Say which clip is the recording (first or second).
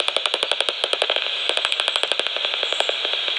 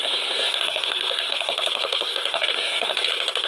first